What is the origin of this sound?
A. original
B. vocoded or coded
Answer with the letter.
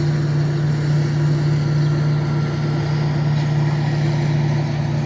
A